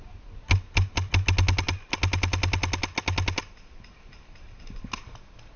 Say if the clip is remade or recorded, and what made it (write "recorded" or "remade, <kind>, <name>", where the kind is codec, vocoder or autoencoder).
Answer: recorded